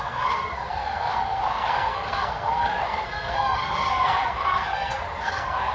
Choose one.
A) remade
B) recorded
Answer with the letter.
A